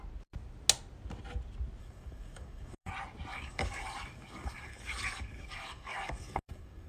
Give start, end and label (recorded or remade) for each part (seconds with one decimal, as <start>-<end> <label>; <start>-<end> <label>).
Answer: 0.0-1.8 recorded; 1.8-2.9 remade; 2.9-3.3 recorded; 3.3-6.9 remade